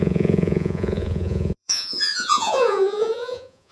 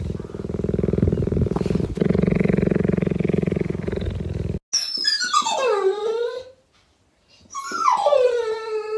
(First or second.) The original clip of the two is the second